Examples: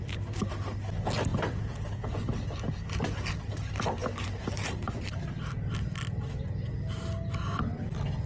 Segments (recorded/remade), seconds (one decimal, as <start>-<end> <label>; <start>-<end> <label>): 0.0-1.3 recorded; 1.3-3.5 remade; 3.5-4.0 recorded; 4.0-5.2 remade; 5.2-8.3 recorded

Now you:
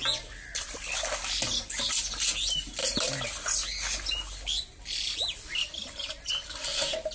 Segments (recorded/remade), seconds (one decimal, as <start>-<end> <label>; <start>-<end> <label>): 0.0-7.1 recorded

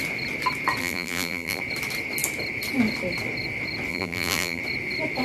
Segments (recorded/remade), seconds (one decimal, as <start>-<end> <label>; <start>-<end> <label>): 0.0-0.8 recorded; 0.8-1.6 remade; 1.6-3.9 recorded; 3.9-4.6 remade; 4.6-5.2 recorded

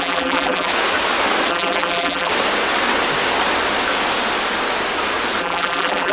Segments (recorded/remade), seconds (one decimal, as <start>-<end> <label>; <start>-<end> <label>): 0.0-0.7 remade; 0.7-1.5 recorded; 1.5-2.3 remade; 2.3-5.4 recorded; 5.4-6.1 remade

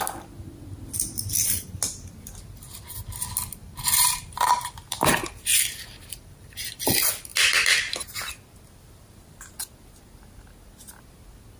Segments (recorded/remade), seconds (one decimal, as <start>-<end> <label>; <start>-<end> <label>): 0.0-3.6 recorded; 3.6-6.8 remade; 6.8-11.6 recorded

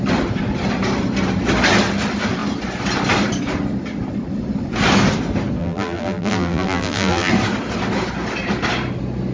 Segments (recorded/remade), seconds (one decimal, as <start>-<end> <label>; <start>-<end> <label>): 0.0-5.6 recorded; 5.6-7.3 remade; 7.3-9.3 recorded

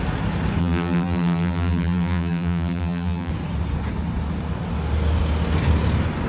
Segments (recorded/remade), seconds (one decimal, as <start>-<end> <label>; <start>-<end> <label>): 0.0-0.6 recorded; 0.6-3.3 remade; 3.3-6.3 recorded